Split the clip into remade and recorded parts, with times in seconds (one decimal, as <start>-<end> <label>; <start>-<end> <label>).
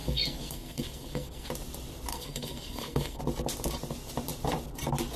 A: 0.0-1.5 remade; 1.5-2.1 recorded; 2.1-3.2 remade; 3.2-5.2 recorded